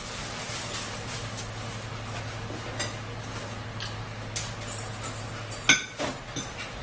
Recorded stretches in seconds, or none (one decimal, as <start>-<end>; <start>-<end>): 0.0-6.8